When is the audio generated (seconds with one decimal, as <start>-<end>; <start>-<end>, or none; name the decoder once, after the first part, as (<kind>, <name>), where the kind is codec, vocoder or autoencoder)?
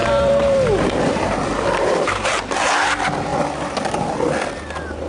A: 0.0-2.4 (vocoder, BigVGAN v2)